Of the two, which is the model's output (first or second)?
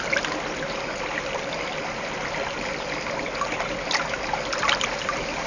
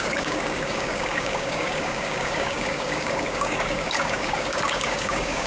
second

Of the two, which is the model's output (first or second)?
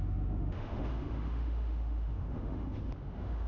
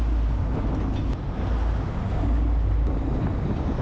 first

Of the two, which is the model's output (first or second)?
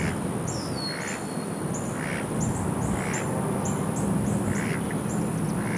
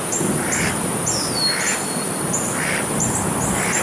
second